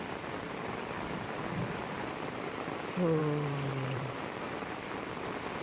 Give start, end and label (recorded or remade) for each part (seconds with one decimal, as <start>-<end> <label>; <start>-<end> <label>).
0.0-3.2 recorded; 3.2-4.8 remade; 4.8-5.6 recorded